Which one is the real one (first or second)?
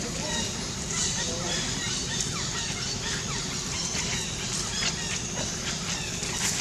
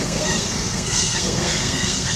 first